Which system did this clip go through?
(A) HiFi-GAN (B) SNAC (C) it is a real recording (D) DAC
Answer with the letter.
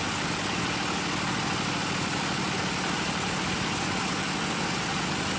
C